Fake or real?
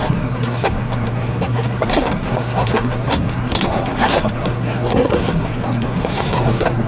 fake